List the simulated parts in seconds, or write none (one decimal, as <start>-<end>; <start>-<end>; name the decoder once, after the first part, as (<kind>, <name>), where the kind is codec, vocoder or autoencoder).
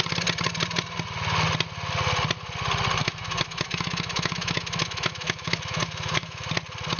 3.0-6.5 (autoencoder, DAC-VAE)